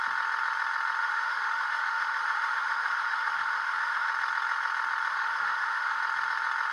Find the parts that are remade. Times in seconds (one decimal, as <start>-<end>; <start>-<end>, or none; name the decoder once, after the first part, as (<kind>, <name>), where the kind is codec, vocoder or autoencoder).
1.0-4.1 (autoencoder, DAC-VAE); 5.1-6.0